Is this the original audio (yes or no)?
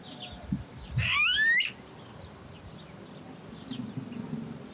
yes